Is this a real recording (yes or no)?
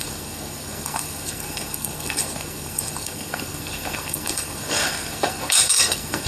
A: no